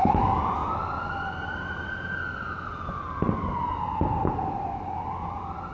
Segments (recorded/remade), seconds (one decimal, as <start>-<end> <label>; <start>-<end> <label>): 0.0-5.7 recorded